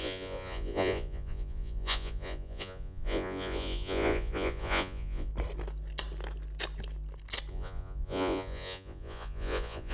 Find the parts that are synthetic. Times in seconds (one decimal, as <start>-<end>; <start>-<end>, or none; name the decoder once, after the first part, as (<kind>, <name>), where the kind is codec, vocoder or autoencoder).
0.0-5.3 (vocoder, Vocos); 7.5-9.9